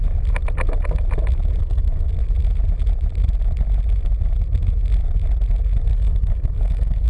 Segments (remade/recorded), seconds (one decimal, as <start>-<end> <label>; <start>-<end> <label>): 0.0-1.6 recorded; 1.6-2.1 remade; 2.1-5.9 recorded; 5.9-7.1 remade